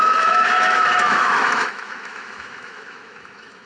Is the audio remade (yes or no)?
yes